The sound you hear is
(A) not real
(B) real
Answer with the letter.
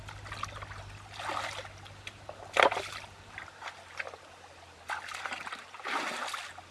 B